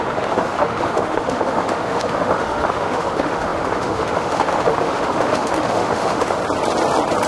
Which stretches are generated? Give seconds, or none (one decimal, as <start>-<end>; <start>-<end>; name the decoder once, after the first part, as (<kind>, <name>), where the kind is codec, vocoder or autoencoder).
0.0-6.4 (autoencoder, DAC-VAE)